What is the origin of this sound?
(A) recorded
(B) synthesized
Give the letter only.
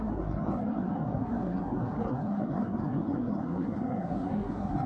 B